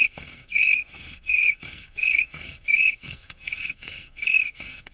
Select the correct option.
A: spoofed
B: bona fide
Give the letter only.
A